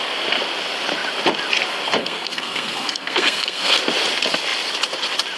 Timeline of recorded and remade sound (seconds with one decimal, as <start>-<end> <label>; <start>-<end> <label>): 0.0-2.0 recorded; 2.0-3.8 remade; 3.8-5.4 recorded